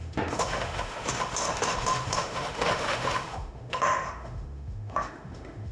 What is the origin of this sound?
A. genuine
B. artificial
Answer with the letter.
B